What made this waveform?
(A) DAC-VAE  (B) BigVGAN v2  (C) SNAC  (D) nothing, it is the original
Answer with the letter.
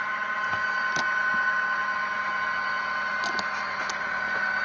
D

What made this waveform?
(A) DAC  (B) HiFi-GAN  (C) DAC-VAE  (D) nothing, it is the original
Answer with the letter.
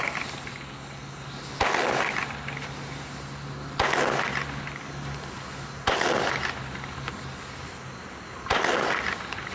D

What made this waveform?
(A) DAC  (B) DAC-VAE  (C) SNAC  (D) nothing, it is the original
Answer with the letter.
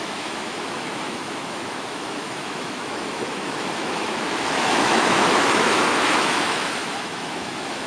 B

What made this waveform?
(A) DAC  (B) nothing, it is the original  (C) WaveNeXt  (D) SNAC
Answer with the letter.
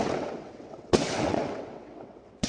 C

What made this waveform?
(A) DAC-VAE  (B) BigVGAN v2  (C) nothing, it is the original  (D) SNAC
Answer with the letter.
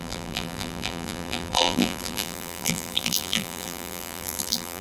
B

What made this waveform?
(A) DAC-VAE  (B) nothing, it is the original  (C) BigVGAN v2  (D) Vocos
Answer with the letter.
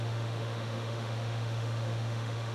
A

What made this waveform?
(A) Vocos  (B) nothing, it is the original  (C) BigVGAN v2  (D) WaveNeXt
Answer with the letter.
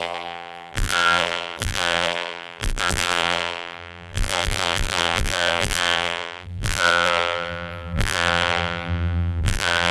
C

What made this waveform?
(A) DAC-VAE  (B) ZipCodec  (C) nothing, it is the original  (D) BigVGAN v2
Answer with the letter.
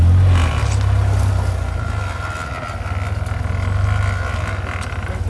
C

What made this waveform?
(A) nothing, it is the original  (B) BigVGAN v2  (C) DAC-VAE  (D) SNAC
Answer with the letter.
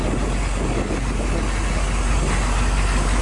A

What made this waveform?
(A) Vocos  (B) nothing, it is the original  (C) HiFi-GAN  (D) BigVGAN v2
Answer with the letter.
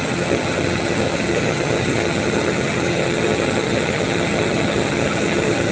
C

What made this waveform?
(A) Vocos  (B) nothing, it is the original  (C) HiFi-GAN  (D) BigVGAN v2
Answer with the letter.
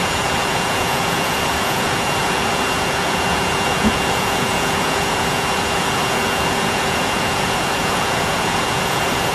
A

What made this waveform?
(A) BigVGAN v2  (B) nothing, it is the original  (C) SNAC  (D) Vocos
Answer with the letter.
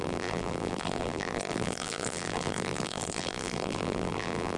A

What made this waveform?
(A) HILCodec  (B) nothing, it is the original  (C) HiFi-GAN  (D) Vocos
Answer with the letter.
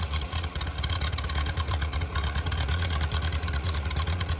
D